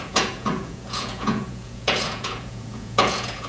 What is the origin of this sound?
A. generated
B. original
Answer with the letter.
A